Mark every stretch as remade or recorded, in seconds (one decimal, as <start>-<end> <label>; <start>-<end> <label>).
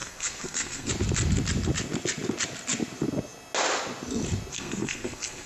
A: 0.0-0.9 remade; 0.9-4.5 recorded; 4.5-5.5 remade